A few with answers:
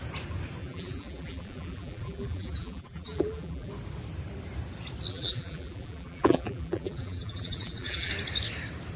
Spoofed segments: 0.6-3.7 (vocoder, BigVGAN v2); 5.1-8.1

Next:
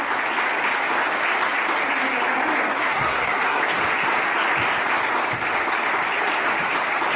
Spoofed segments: 2.7-3.6 (codec, SNAC)